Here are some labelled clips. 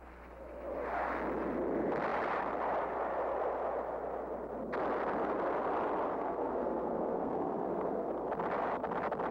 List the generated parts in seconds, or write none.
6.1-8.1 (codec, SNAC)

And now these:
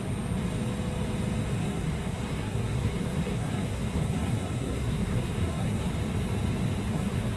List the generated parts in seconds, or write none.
1.6-5.9 (codec, SNAC); 6.9-7.4

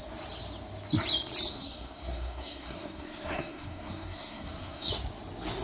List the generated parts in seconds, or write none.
1.5-4.9 (codec, SNAC)

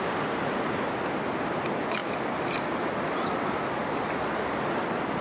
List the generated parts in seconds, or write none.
none

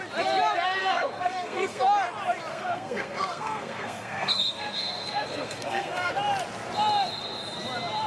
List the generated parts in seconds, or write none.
0.8-1.8 (codec, SNAC); 2.5-6.1

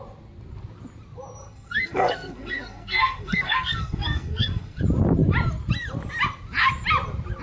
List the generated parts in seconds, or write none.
1.4-4.8 (codec, SNAC)

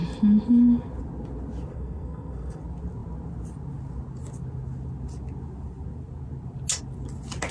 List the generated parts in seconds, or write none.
1.7-2.6 (codec, SNAC)